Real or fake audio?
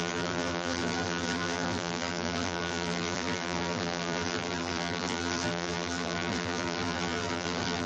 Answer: fake